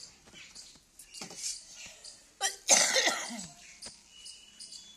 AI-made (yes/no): no